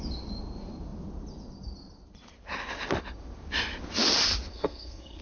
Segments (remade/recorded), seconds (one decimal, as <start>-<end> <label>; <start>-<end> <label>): 0.0-4.5 recorded; 4.5-5.2 remade